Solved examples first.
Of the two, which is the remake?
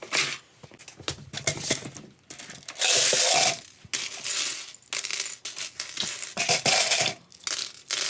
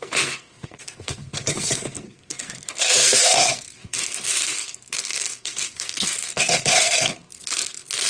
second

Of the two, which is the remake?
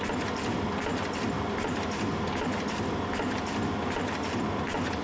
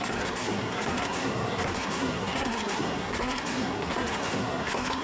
second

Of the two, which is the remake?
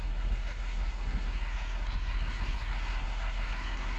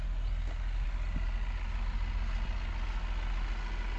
first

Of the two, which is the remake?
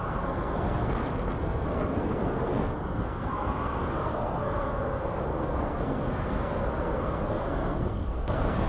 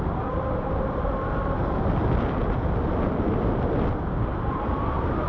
first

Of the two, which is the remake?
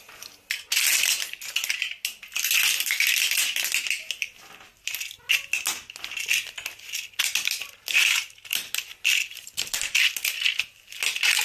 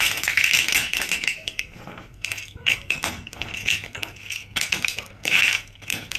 second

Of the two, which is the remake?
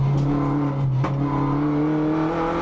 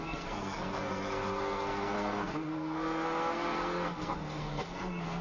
second